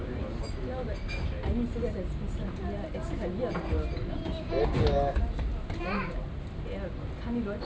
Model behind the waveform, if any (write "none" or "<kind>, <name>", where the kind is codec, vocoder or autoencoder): none